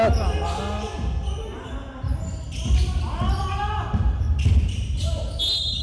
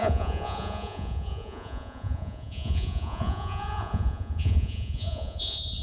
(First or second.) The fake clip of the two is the second